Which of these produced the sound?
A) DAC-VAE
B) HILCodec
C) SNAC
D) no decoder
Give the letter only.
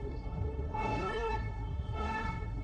C